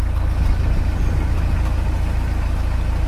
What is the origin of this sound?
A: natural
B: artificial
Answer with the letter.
A